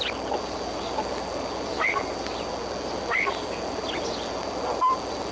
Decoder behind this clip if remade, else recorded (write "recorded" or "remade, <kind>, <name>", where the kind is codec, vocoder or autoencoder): recorded